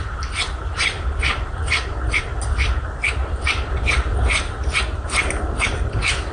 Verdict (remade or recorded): remade